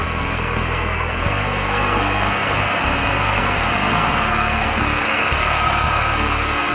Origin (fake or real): fake